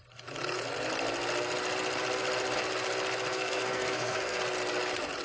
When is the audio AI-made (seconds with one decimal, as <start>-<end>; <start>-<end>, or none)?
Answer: 3.3-4.4